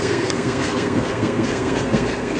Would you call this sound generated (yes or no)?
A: yes